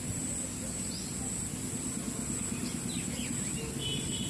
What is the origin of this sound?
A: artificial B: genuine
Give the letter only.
B